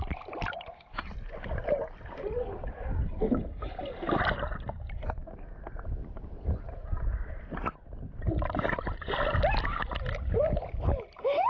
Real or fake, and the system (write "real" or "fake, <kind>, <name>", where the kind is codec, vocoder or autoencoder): real